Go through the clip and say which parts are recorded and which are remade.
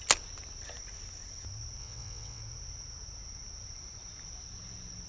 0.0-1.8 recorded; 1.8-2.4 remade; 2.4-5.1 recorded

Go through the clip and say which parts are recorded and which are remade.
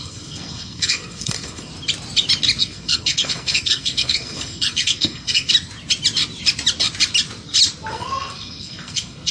0.0-1.7 remade; 1.7-2.6 recorded; 2.6-5.5 remade; 5.5-7.9 recorded; 7.9-9.3 remade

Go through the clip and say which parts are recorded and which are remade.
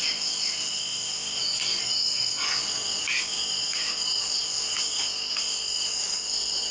0.0-1.4 recorded; 1.4-2.6 remade; 2.6-6.7 recorded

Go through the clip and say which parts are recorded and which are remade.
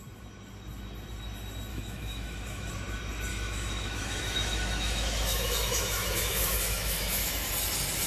0.0-1.7 recorded; 1.7-2.7 remade; 2.7-3.3 recorded; 3.3-7.5 remade; 7.5-8.1 recorded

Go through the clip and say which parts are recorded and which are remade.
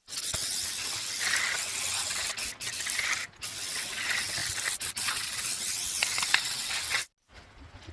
0.0-7.9 recorded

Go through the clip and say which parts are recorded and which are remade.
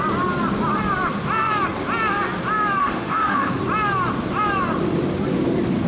0.0-2.8 recorded; 2.8-3.6 remade; 3.6-5.9 recorded